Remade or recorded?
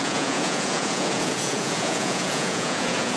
remade